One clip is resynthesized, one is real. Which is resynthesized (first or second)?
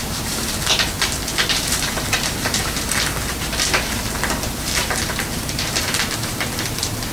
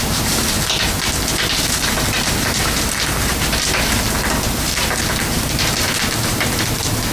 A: first